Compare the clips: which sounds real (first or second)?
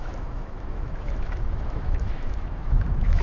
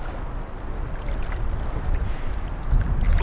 second